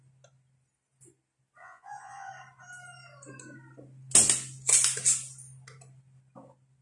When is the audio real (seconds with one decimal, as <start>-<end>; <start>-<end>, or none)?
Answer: 0.0-1.6; 2.3-6.8